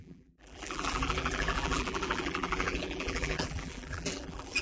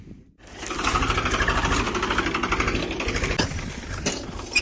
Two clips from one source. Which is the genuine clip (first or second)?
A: second